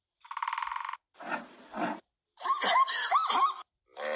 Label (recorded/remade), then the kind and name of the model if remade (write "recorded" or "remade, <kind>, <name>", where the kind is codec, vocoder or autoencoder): recorded